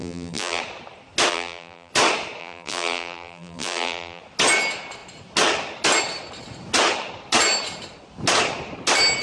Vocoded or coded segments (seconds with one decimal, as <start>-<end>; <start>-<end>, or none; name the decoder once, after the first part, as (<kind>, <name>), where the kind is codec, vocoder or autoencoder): 0.0-0.6 (vocoder, BigVGAN v2); 1.3-1.9; 2.4-4.2